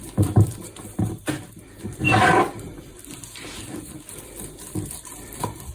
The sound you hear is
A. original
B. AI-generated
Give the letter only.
B